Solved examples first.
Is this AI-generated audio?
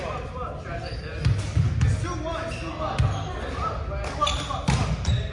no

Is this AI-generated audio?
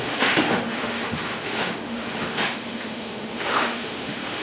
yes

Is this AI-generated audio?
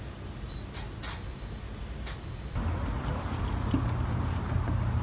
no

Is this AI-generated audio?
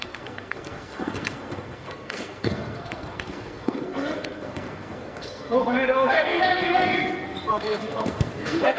yes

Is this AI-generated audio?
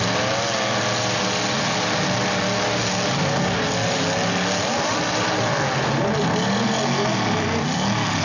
no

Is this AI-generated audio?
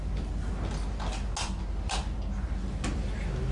no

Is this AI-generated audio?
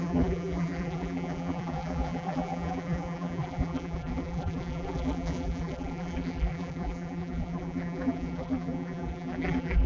yes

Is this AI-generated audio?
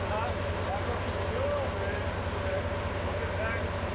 no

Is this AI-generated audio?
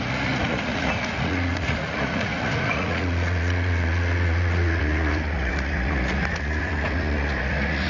yes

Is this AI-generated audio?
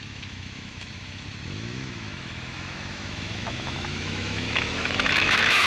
yes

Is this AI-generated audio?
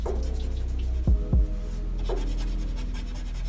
no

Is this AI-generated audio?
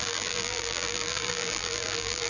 yes